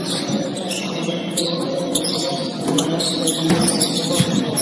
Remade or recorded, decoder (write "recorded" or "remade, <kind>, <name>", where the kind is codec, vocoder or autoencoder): remade, vocoder, Vocos